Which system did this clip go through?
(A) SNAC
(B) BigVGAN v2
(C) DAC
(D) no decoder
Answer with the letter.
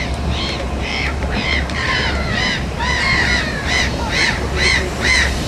B